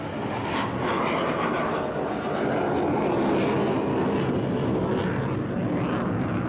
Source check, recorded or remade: recorded